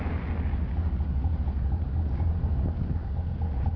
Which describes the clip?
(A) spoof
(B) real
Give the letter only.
B